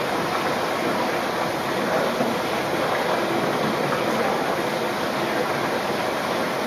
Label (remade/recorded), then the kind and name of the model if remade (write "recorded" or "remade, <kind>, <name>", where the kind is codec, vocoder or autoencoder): recorded